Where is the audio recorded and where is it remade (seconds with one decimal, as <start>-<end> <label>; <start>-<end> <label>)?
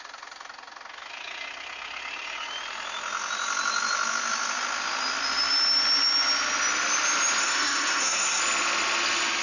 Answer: 0.0-7.4 recorded; 7.4-8.4 remade; 8.4-9.4 recorded